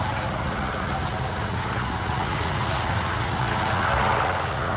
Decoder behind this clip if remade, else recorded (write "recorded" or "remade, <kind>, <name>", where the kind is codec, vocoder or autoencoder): remade, vocoder, Vocos